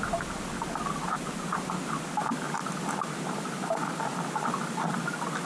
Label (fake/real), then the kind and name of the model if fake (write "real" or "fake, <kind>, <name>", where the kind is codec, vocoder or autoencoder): real